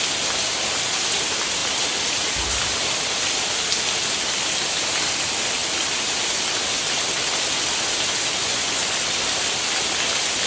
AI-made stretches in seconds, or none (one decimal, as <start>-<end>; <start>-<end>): 8.4-8.9